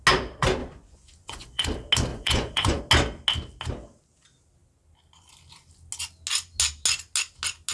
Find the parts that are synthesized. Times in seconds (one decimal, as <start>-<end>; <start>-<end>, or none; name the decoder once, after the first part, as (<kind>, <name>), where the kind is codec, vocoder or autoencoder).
0.6-1.6 (vocoder, Vocos); 2.1-2.8